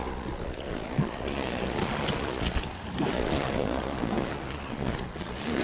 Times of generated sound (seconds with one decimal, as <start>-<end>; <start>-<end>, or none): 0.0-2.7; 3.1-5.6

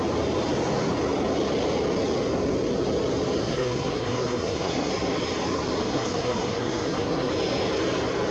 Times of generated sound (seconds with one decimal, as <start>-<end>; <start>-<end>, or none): 3.4-4.9; 5.8-7.3

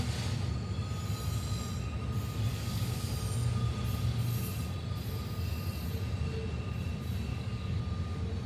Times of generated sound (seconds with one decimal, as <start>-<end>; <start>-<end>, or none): 2.5-3.1; 7.3-7.8

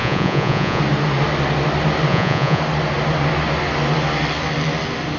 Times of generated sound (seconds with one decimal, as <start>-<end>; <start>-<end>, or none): 0.0-0.8; 2.1-2.6